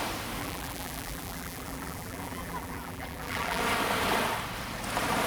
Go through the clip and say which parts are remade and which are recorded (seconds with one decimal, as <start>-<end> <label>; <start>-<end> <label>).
0.0-0.4 recorded; 0.4-3.6 remade; 3.6-5.3 recorded